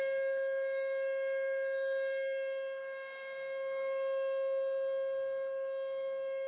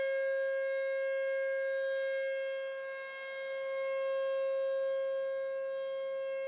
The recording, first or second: second